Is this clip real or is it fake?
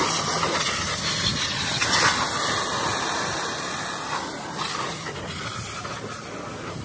real